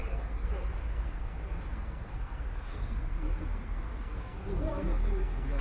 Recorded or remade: remade